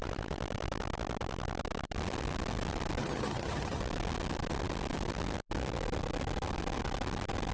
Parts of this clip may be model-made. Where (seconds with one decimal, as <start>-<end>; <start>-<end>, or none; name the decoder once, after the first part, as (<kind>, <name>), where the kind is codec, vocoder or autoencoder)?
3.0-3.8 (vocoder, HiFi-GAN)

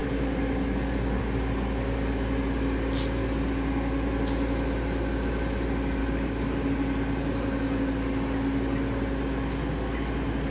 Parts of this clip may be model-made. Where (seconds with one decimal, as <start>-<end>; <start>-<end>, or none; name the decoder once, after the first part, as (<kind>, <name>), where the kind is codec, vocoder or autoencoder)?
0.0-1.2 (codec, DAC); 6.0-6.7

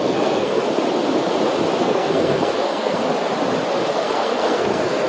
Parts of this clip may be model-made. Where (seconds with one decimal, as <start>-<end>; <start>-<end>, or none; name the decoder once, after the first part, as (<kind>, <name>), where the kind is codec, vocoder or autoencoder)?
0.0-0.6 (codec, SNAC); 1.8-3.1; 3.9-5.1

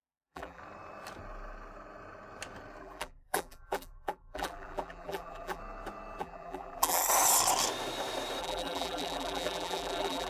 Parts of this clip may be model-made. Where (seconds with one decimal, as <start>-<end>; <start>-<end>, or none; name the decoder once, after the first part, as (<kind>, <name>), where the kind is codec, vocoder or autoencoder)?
0.0-0.6 (vocoder, BigVGAN v2); 2.8-5.6; 6.2-7.0; 8.4-10.3

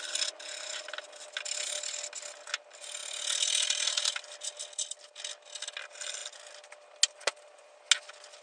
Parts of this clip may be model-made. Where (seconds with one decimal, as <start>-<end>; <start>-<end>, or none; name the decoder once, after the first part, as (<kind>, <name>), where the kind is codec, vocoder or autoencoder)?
none

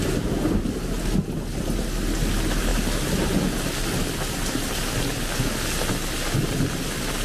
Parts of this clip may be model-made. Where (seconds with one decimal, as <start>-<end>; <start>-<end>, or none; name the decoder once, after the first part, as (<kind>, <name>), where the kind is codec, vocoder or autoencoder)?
none

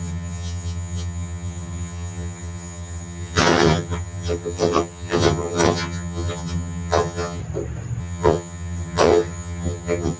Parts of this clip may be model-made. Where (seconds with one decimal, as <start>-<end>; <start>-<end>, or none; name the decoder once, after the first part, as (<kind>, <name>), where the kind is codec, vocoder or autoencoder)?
0.0-7.4 (vocoder, HiFi-GAN); 8.0-10.2

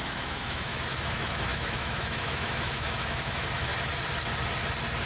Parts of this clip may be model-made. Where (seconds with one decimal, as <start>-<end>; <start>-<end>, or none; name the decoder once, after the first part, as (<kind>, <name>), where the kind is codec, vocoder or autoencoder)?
0.0-3.7 (autoencoder, DAC-VAE)